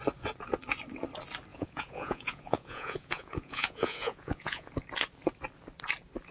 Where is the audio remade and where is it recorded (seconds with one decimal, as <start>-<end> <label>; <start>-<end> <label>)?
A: 0.0-1.5 recorded; 1.5-4.7 remade; 4.7-6.3 recorded